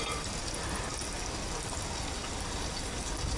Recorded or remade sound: remade